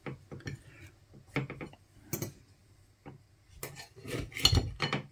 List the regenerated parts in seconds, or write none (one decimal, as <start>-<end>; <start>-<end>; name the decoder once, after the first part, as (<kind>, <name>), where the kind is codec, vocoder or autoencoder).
none